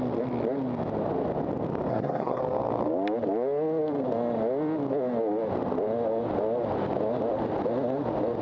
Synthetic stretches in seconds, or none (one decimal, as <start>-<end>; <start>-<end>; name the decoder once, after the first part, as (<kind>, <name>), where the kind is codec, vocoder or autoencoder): 1.9-2.4 (codec, SNAC)